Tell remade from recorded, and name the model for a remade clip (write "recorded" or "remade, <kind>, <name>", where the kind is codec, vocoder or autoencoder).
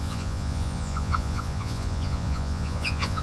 remade, vocoder, Vocos